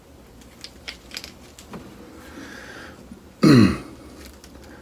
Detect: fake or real real